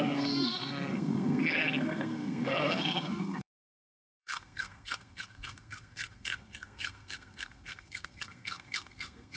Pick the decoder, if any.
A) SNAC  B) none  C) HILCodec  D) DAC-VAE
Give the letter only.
A